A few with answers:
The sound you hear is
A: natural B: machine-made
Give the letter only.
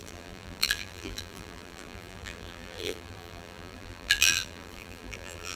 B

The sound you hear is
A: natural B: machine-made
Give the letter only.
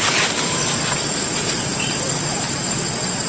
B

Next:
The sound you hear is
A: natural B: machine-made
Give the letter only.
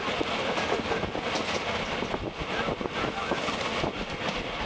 A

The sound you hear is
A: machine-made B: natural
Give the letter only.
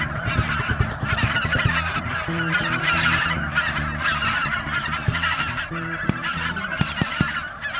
A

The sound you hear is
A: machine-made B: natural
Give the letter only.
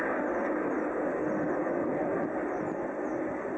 B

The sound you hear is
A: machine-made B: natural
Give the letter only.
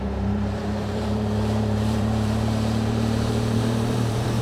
A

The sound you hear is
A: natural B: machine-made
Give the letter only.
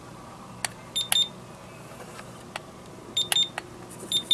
A